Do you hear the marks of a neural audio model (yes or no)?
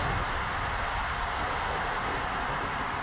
no